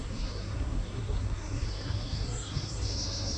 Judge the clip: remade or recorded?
remade